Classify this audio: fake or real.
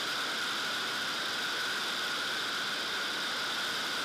real